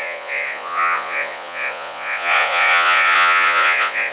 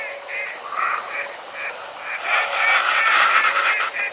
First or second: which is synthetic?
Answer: first